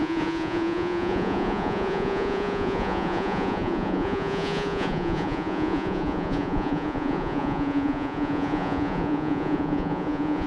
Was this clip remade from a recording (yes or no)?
yes